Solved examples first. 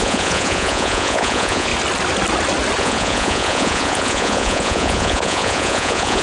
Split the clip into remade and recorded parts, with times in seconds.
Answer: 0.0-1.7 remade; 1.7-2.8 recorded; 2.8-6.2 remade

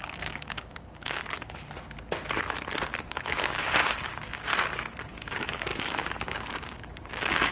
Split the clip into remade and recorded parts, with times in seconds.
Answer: 0.0-1.2 remade; 1.2-3.1 recorded; 3.1-4.5 remade; 4.5-5.1 recorded; 5.1-7.5 remade